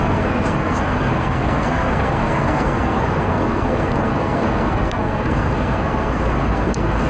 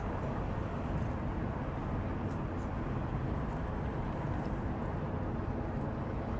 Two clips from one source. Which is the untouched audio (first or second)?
second